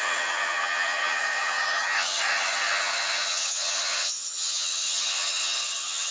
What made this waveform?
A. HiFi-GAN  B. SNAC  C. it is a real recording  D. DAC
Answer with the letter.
A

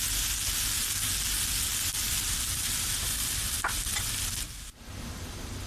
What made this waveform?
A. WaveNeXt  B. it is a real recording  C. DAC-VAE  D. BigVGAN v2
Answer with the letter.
B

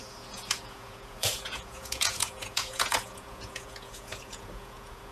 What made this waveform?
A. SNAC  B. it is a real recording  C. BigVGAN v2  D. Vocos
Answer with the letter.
D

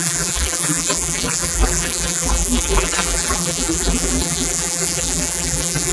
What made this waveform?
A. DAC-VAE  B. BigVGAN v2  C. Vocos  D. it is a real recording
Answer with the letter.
B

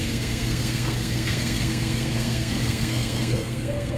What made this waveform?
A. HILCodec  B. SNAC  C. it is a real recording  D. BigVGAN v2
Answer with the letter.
B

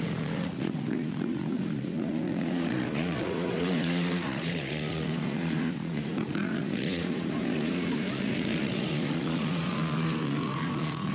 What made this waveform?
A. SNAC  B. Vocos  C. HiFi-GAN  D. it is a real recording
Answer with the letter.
B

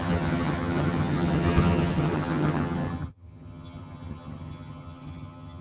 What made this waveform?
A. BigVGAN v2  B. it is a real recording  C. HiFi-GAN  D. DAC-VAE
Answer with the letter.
C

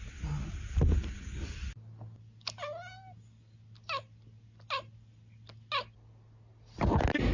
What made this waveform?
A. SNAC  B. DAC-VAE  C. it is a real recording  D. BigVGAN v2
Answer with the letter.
C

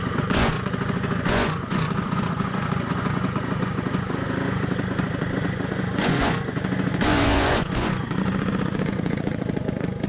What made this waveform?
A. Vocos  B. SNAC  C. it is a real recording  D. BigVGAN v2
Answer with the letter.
A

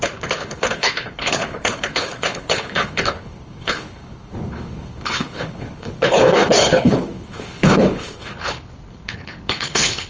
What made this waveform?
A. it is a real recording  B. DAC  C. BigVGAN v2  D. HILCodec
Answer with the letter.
D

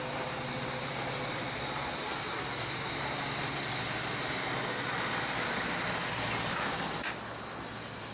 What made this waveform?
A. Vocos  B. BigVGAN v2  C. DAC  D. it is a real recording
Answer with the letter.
D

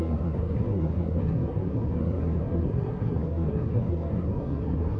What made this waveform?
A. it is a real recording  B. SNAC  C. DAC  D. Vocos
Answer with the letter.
B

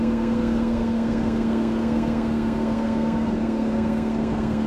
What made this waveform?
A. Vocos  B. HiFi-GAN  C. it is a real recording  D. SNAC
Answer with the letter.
D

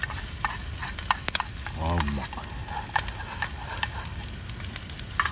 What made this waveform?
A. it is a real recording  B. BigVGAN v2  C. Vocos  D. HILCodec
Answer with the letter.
A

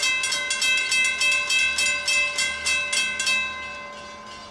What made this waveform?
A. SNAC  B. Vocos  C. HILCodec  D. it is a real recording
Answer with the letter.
D